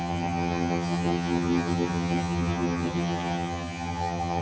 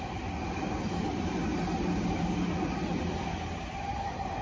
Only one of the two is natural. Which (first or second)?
second